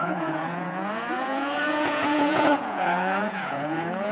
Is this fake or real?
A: fake